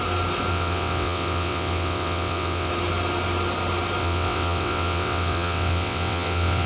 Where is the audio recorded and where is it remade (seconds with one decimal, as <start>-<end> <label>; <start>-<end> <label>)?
0.0-0.5 recorded; 0.5-2.7 remade; 2.7-4.0 recorded; 4.0-6.7 remade